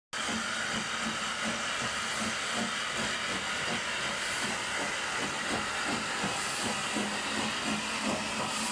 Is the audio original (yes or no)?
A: yes